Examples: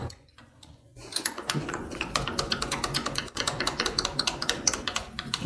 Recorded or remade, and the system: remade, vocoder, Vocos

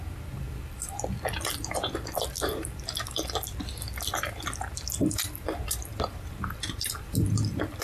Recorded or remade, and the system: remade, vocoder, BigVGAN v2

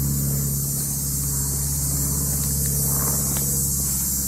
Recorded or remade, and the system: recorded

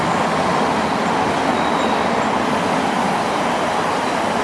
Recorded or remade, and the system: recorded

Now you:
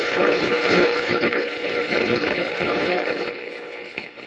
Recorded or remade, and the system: remade, codec, HILCodec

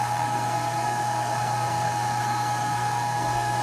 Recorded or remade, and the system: remade, codec, SNAC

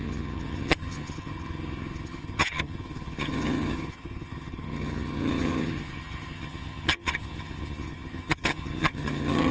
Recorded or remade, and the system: remade, vocoder, HiFi-GAN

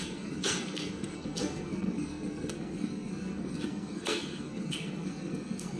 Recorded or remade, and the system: remade, codec, SNAC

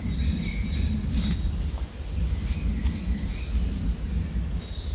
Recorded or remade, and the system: recorded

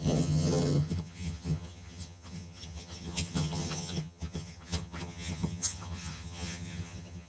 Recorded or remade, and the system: remade, vocoder, HiFi-GAN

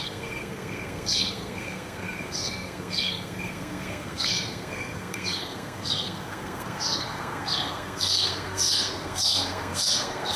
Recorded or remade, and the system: remade, codec, SNAC